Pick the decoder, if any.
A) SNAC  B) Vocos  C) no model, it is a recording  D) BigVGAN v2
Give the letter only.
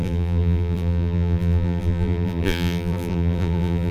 D